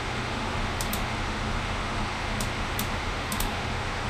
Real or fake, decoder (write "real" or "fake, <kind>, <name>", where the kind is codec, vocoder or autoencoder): fake, autoencoder, DAC-VAE